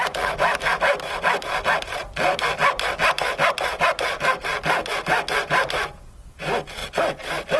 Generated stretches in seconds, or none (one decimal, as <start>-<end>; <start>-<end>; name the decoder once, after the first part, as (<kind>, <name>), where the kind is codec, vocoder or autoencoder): none